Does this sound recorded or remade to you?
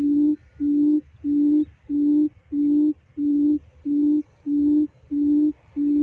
recorded